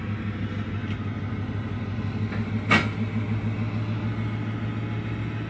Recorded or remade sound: recorded